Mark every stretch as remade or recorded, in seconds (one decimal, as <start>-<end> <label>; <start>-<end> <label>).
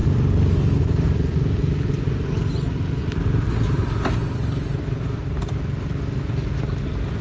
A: 0.0-7.2 recorded